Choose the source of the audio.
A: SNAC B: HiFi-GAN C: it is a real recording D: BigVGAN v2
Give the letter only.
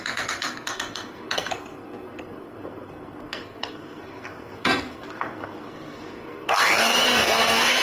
A